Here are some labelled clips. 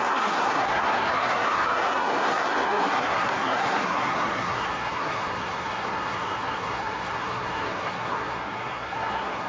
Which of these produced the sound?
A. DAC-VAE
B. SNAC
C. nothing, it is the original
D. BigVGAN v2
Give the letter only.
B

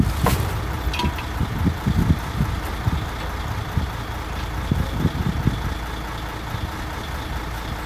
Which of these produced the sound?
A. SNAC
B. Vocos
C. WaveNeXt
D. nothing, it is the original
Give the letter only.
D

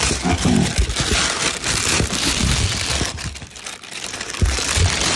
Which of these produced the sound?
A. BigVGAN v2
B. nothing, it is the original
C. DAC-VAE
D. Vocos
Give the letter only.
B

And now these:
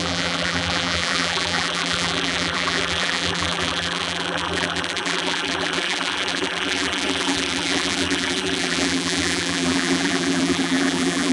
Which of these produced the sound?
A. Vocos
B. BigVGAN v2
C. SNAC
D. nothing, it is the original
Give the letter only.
B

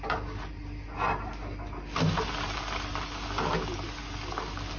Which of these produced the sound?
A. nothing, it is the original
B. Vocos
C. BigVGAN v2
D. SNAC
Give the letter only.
A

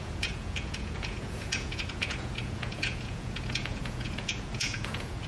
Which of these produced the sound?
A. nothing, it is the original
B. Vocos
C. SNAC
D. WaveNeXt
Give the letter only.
B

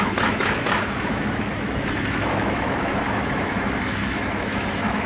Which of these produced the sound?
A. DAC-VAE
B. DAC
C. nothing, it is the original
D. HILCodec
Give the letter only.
A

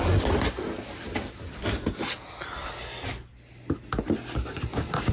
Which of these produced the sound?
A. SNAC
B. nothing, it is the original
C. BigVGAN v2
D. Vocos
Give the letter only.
B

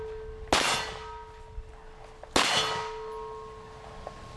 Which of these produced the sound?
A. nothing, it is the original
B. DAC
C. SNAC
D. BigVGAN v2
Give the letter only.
A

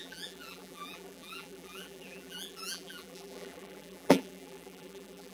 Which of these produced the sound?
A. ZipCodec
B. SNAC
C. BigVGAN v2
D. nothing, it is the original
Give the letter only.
C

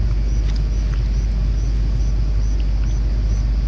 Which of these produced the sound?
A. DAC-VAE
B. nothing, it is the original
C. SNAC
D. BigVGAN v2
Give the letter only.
B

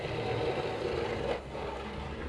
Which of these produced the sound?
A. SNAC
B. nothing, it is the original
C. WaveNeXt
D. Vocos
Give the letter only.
B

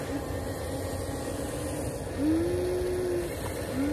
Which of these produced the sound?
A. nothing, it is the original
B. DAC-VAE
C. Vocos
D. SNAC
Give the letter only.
A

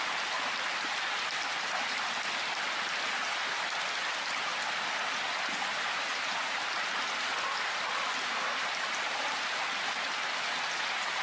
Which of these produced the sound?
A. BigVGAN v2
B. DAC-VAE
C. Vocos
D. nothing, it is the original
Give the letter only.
D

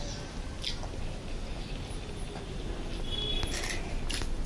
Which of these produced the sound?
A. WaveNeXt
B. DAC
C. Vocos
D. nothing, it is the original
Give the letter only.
D